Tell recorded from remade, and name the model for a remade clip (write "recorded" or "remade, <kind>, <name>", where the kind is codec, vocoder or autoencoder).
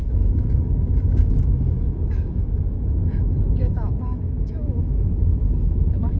remade, autoencoder, DAC-VAE